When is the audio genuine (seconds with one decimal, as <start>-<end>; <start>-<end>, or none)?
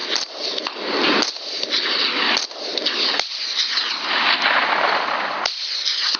0.0-6.2